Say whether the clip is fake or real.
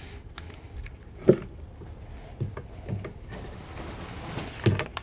real